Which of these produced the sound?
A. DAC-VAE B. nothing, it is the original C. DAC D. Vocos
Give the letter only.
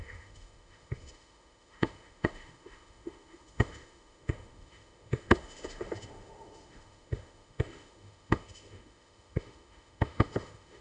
A